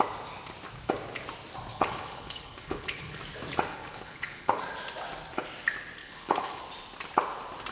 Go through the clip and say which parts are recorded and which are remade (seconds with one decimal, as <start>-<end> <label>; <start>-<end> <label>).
0.0-1.7 recorded; 1.7-3.2 remade; 3.2-3.7 recorded; 3.7-4.6 remade; 4.6-6.0 recorded; 6.0-6.6 remade; 6.6-7.7 recorded